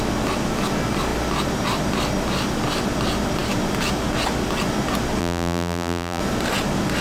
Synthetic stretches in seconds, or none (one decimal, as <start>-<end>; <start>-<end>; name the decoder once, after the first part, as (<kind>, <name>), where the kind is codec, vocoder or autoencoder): 5.2-6.2 (vocoder, BigVGAN v2)